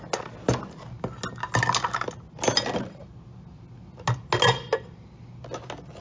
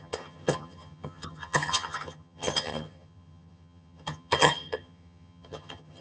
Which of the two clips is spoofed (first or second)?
second